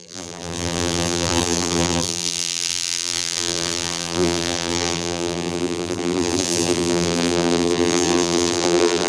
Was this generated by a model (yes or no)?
yes